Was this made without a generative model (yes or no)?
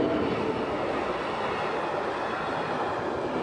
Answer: yes